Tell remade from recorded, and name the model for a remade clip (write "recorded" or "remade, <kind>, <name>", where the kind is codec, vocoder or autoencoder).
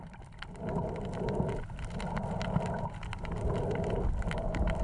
recorded